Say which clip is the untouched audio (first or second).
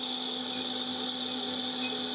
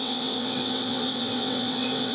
first